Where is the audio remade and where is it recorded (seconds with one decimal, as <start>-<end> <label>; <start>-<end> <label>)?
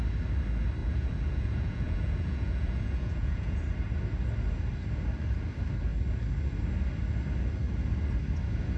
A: 0.0-0.8 recorded; 0.8-3.6 remade; 3.6-8.8 recorded